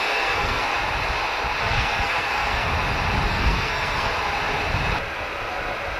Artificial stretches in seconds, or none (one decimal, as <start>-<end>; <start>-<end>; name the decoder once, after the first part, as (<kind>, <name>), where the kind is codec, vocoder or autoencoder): 0.0-0.7 (codec, SNAC); 1.6-2.7; 3.3-4.1